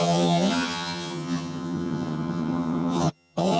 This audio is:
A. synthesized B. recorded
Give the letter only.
A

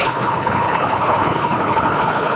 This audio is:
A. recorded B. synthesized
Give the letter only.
B